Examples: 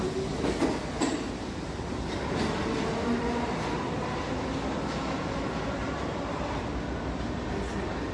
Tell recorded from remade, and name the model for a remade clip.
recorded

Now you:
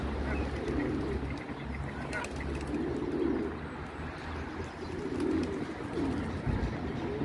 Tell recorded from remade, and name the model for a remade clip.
recorded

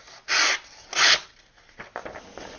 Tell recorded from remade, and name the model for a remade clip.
recorded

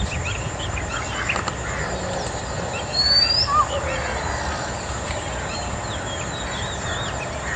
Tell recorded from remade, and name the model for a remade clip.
recorded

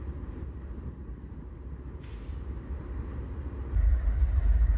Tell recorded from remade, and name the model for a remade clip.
recorded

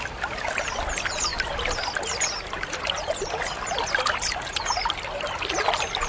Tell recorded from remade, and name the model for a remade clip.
recorded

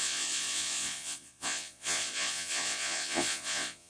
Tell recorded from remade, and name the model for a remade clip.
remade, vocoder, Vocos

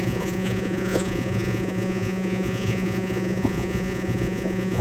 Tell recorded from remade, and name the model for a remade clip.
remade, vocoder, Vocos